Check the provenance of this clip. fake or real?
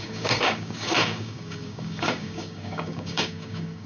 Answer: fake